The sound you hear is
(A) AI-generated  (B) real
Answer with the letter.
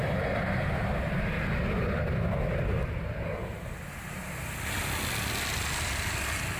B